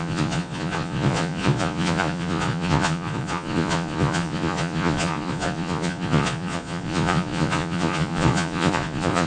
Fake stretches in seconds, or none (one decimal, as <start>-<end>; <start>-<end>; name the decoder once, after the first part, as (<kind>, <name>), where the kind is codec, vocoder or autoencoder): 0.0-9.3 (vocoder, Vocos)